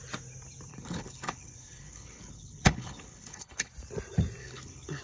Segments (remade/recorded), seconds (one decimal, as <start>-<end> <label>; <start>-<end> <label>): 0.0-0.7 recorded; 0.7-3.7 remade; 3.7-4.4 recorded; 4.4-5.0 remade